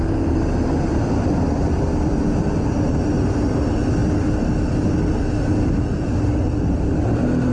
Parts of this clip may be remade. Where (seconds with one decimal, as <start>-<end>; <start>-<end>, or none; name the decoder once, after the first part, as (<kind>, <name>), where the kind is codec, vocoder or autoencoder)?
0.9-3.0 (vocoder, BigVGAN v2)